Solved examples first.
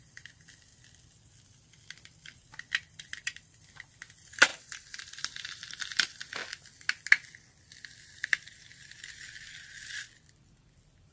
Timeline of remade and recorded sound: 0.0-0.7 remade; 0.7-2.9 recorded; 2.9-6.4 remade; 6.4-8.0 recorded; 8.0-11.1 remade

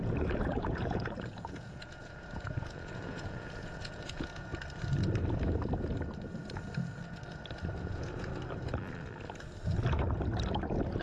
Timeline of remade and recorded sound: 0.0-4.5 remade; 4.5-7.8 recorded; 7.8-8.3 remade; 8.3-11.0 recorded

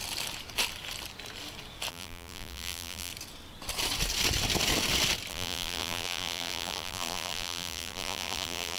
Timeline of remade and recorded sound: 0.0-1.9 recorded; 1.9-3.1 remade; 3.1-5.3 recorded; 5.3-8.8 remade

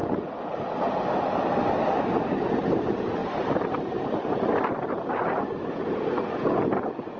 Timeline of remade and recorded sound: 0.0-3.2 recorded; 3.2-6.1 remade; 6.1-7.2 recorded

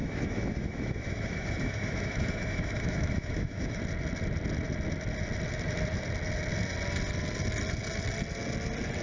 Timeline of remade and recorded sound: 0.0-3.8 remade; 3.8-9.0 recorded